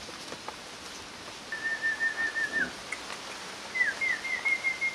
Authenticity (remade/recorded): recorded